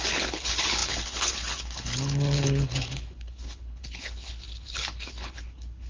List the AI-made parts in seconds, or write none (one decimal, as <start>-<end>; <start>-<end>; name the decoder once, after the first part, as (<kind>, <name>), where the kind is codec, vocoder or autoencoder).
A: 0.0-5.9 (codec, HILCodec)